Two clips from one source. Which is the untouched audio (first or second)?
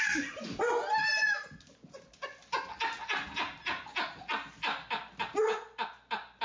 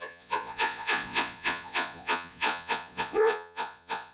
first